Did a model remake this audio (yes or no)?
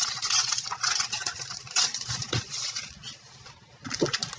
yes